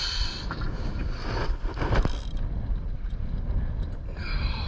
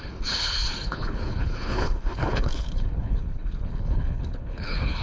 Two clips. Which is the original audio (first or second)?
first